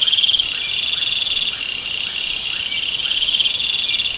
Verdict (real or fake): real